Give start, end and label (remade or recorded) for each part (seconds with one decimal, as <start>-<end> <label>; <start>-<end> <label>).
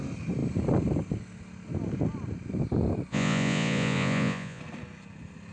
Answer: 0.0-3.1 recorded; 3.1-4.6 remade; 4.6-5.5 recorded